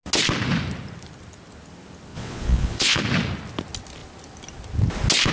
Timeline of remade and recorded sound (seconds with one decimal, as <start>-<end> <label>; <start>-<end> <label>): 0.0-2.1 recorded; 2.1-3.0 remade; 3.0-5.3 recorded